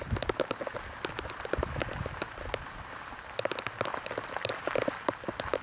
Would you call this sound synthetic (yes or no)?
no